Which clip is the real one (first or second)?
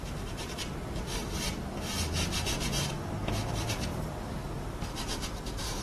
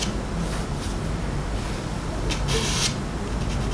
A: second